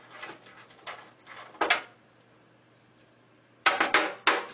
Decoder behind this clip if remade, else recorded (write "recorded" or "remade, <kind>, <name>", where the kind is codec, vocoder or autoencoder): recorded